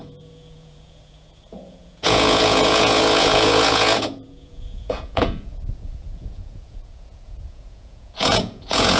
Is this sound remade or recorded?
remade